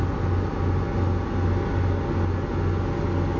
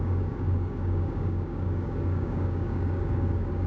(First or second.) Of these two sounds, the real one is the first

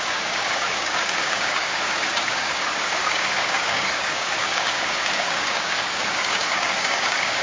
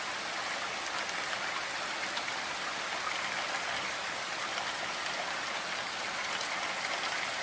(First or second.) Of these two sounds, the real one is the second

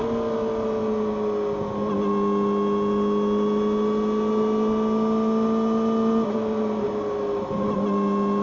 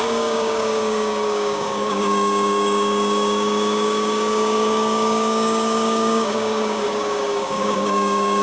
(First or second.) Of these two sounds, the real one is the first